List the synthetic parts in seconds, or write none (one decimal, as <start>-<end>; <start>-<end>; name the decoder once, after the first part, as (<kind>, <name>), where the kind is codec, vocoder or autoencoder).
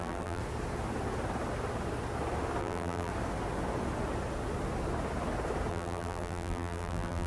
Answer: 0.0-0.4 (vocoder, BigVGAN v2); 2.6-3.1; 5.7-7.3